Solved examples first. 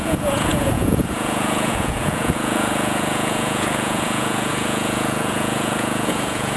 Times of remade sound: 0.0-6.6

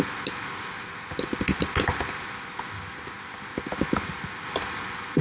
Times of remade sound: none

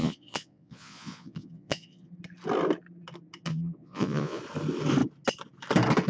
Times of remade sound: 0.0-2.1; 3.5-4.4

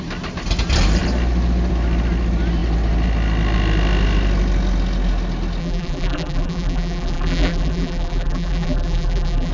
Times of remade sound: 5.6-9.5